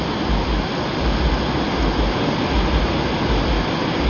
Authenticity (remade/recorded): recorded